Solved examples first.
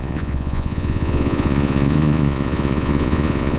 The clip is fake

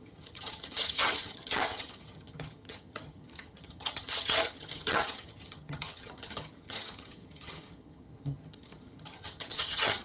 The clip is fake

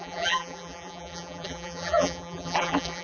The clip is fake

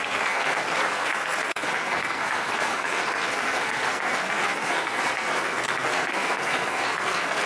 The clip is fake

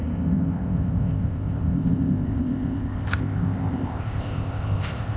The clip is fake